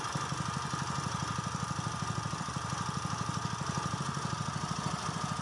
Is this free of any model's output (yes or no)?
yes